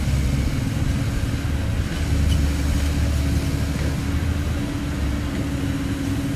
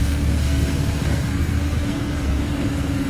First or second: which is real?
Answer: first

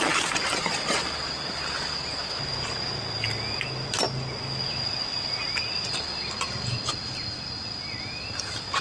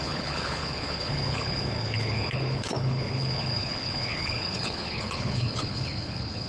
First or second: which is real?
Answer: first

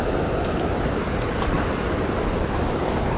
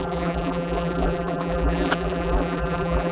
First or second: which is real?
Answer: first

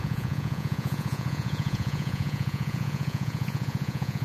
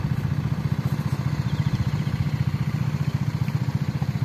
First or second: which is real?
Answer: second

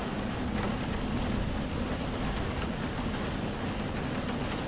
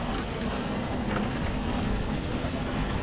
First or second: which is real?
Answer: first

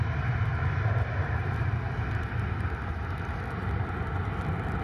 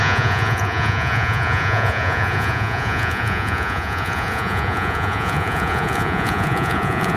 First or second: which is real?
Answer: first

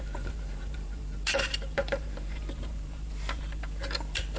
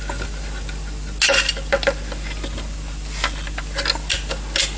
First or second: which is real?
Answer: second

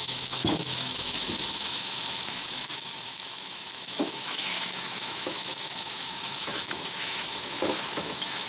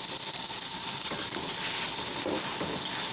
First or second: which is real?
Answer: second